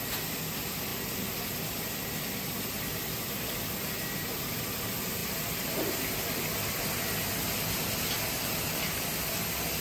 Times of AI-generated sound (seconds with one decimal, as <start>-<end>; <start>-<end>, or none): none

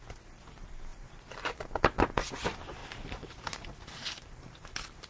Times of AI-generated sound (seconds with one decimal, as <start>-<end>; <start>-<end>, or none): 0.9-1.8; 2.8-5.1